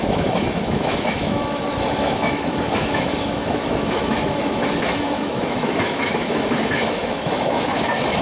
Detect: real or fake fake